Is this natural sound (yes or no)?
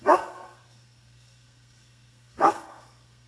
no